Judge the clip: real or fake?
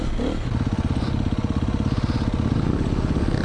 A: real